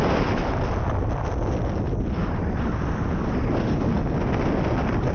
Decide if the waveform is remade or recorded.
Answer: recorded